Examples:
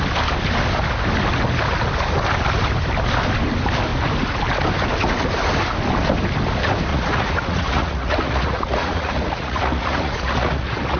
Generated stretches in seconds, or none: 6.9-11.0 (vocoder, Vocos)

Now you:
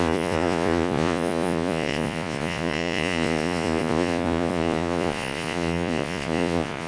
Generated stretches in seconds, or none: 0.0-6.9 (vocoder, Vocos)

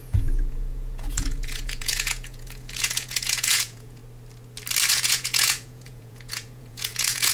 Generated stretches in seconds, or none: 0.0-4.0 (vocoder, Vocos); 4.9-7.3

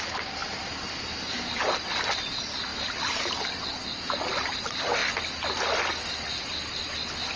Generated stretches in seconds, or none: none

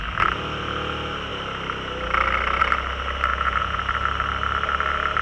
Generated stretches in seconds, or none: 3.3-3.8 (vocoder, Vocos)

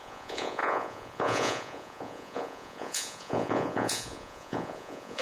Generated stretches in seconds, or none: 0.0-5.2 (vocoder, Vocos)

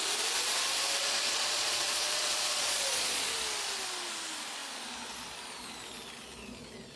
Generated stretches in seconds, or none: 1.0-3.3 (vocoder, Vocos)

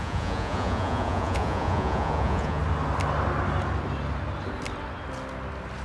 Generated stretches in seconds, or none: 0.0-2.6 (vocoder, Vocos)